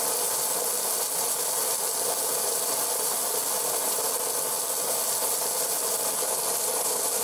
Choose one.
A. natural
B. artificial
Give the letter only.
A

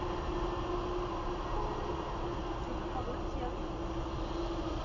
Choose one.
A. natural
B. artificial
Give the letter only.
A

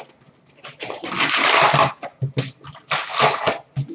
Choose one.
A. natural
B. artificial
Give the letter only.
A